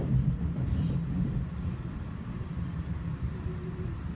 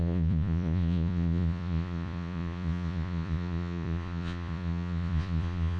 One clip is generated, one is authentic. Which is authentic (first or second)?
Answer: first